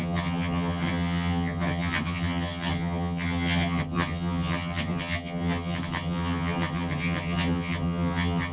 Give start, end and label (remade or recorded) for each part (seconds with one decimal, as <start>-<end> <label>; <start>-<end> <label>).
0.0-8.5 remade